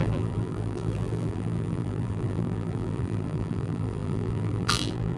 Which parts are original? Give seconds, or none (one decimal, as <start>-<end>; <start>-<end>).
none